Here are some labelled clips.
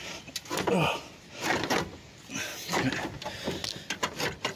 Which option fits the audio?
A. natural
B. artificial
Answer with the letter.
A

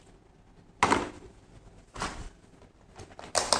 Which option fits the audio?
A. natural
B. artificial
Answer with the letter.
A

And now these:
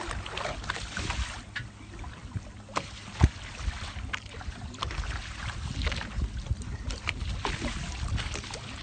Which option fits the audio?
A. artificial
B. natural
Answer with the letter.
B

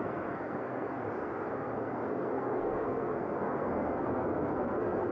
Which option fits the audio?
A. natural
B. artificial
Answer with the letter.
B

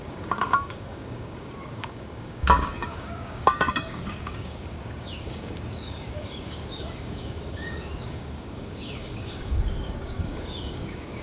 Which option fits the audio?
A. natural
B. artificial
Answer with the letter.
B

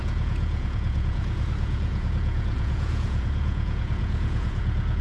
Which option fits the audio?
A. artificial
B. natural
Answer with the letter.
A